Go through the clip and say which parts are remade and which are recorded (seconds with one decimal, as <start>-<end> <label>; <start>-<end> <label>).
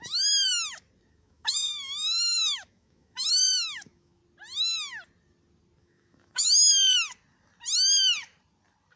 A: 0.0-0.5 remade; 0.5-1.1 recorded; 1.1-4.2 remade; 4.2-5.8 recorded; 5.8-6.7 remade; 6.7-9.0 recorded